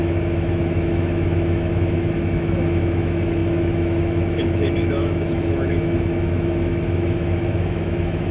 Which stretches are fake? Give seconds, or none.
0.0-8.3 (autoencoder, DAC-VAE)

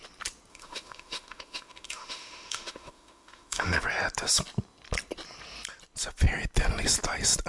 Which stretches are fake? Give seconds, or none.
0.5-3.8 (autoencoder, DAC-VAE)